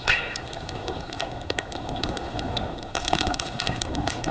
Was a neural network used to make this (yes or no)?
yes